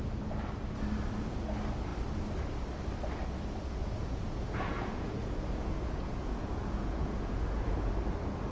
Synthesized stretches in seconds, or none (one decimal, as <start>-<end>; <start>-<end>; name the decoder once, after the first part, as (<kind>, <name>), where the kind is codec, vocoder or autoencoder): 3.8-7.9 (vocoder, Vocos)